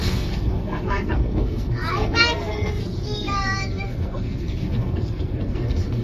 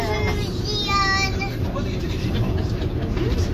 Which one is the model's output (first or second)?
first